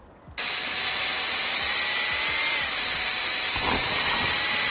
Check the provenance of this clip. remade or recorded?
recorded